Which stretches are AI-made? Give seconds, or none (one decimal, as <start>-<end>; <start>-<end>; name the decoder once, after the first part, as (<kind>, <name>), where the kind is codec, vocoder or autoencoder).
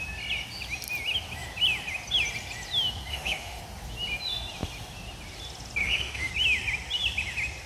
3.1-3.6 (autoencoder, DAC-VAE); 5.8-6.3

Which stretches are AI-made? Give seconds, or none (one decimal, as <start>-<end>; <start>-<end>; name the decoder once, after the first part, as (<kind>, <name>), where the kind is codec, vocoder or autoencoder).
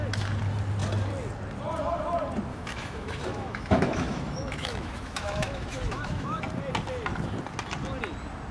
2.5-6.4 (autoencoder, DAC-VAE)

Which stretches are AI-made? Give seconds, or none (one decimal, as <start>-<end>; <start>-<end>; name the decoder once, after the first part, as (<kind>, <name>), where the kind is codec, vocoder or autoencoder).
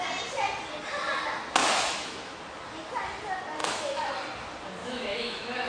1.6-2.4 (autoencoder, DAC-VAE); 3.6-4.1; 4.8-5.7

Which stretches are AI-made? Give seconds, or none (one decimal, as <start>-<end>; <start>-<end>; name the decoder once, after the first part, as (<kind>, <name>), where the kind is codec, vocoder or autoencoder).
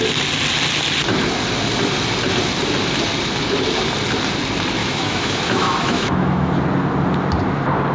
4.8-6.5 (autoencoder, DAC-VAE)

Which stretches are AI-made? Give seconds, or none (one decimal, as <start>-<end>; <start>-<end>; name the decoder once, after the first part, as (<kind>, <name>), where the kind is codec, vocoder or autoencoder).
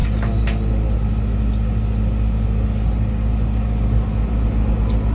none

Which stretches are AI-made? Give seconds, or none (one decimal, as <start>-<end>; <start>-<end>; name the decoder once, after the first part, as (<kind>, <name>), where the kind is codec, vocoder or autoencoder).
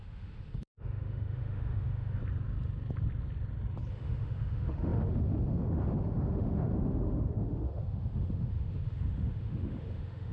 0.0-2.2 (autoencoder, DAC-VAE); 3.9-10.3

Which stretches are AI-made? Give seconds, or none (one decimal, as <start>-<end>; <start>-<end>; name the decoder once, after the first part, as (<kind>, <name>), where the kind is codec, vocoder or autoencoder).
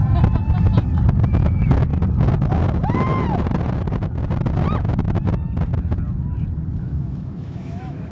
1.4-1.9 (autoencoder, DAC-VAE); 6.8-8.1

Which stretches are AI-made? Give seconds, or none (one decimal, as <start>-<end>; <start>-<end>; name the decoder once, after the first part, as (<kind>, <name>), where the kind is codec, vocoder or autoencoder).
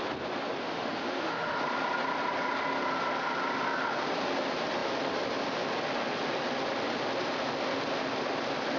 0.6-1.6 (autoencoder, DAC-VAE)